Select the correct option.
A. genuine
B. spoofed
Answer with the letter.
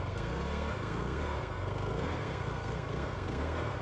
B